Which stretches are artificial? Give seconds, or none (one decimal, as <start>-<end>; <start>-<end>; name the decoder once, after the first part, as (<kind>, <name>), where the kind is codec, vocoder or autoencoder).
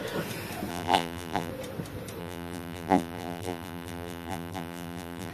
0.7-1.5 (vocoder, BigVGAN v2); 2.2-5.3